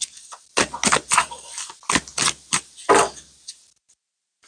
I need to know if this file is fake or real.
real